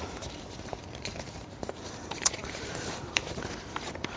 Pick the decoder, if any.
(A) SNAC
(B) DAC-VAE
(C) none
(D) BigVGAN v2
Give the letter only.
D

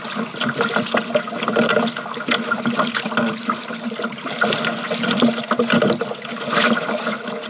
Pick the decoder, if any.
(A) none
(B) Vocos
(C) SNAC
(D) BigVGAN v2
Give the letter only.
A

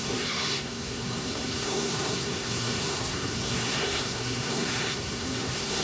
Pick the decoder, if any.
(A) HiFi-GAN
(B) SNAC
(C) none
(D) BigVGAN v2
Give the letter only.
B